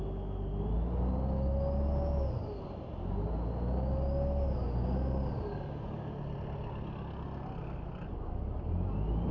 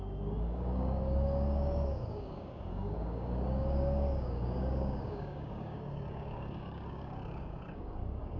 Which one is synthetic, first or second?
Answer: second